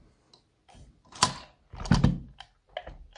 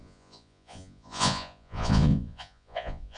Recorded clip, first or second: first